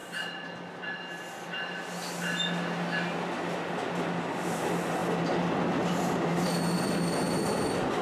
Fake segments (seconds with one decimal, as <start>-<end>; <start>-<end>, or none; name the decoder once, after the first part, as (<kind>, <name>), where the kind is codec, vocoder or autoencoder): none